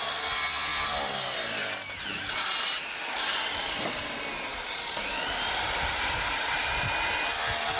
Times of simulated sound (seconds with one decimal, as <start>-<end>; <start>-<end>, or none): none